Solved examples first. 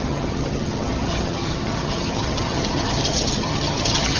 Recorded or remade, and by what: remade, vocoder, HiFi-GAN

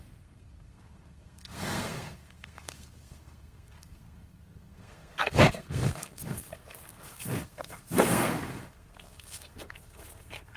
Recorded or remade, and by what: remade, codec, SNAC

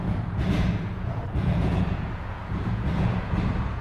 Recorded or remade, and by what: remade, vocoder, Vocos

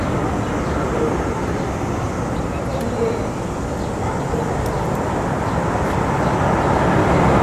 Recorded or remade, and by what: recorded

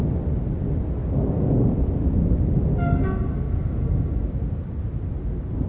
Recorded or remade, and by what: recorded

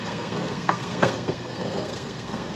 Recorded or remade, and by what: remade, codec, SNAC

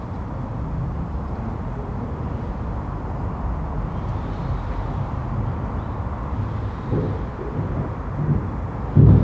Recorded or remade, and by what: recorded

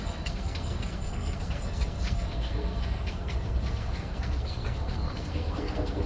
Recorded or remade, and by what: remade, codec, SNAC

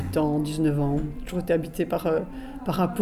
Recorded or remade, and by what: recorded